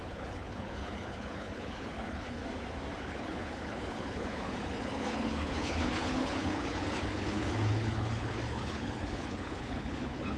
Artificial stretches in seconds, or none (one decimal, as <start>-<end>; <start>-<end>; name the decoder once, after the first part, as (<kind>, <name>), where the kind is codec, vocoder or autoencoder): 0.0-2.4 (codec, HILCodec); 3.0-10.4